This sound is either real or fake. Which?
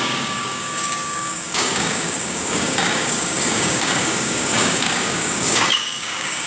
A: fake